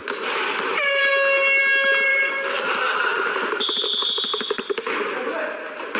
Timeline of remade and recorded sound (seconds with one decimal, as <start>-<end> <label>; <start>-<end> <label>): 0.0-2.1 recorded; 2.1-2.7 remade; 2.7-6.0 recorded